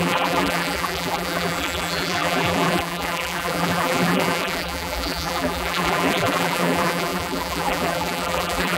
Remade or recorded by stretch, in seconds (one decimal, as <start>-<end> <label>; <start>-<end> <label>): 0.0-8.8 remade